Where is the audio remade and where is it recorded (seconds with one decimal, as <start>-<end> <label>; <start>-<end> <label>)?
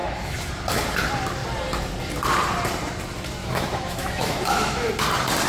0.0-0.5 remade; 0.5-3.4 recorded; 3.4-4.9 remade; 4.9-5.5 recorded